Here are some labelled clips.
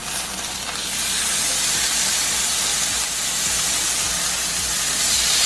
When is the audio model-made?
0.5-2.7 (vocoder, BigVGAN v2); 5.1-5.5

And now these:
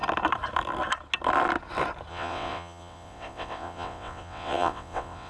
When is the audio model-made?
2.1-5.3 (vocoder, WaveNeXt)

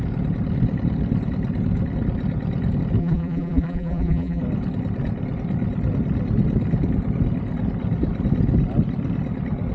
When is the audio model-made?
3.0-4.4 (vocoder, BigVGAN v2)

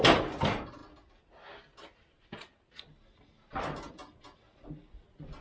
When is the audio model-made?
none